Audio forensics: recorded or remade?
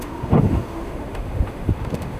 remade